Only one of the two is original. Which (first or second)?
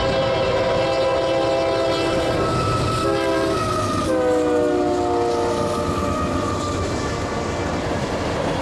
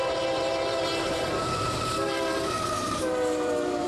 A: first